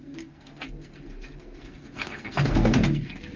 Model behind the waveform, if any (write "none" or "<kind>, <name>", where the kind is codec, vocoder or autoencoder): codec, SNAC